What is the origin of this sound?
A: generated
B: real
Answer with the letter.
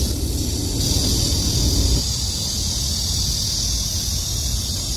B